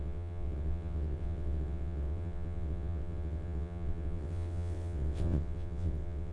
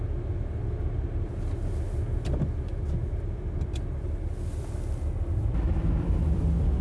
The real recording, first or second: second